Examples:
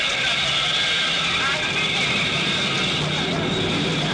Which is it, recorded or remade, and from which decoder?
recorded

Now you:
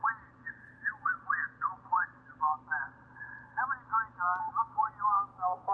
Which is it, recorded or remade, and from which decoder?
recorded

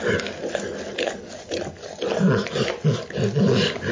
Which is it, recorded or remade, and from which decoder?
recorded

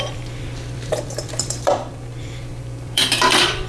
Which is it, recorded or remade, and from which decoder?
remade, vocoder, BigVGAN v2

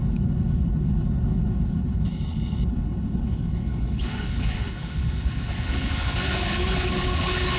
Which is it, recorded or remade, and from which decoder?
remade, codec, HILCodec